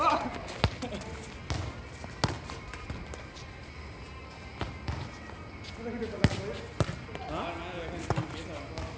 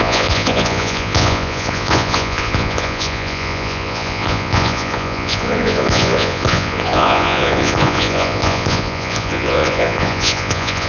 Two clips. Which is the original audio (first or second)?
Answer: first